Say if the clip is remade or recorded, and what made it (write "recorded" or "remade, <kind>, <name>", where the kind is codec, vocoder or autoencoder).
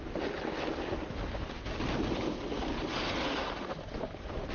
recorded